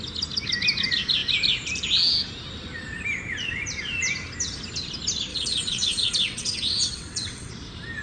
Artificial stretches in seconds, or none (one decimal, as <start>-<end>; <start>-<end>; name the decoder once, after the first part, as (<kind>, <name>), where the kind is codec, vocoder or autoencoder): 5.3-7.5 (vocoder, WaveNeXt)